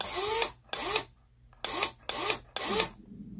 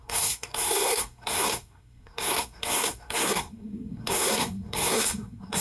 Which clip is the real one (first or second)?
first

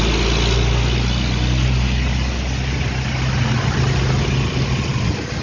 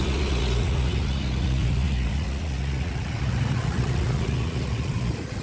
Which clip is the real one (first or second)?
first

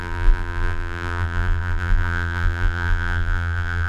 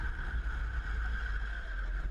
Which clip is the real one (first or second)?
second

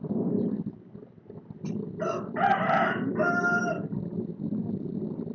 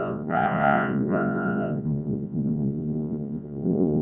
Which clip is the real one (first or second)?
first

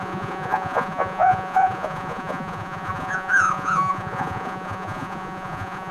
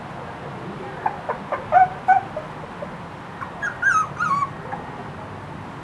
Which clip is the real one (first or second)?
second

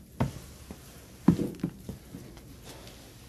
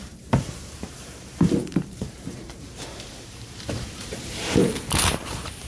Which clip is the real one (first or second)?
first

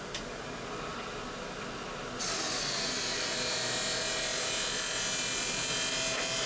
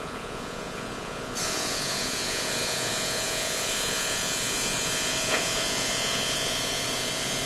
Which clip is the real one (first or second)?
first